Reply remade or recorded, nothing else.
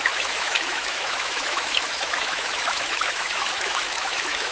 remade